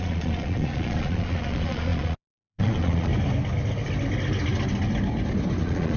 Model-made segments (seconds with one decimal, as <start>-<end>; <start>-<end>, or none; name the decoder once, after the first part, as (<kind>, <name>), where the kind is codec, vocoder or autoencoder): 0.0-3.1 (vocoder, Vocos); 5.6-6.0

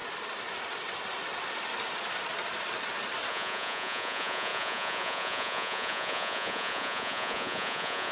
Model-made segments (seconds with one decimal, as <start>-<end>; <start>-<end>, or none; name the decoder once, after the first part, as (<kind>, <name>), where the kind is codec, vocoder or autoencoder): 3.3-8.1 (vocoder, Vocos)